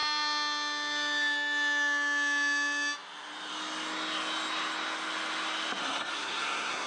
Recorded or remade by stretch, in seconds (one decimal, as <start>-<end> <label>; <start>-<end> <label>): 0.0-5.8 recorded; 5.8-6.9 remade